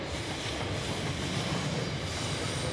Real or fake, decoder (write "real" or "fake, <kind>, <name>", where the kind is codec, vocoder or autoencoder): fake, vocoder, BigVGAN v2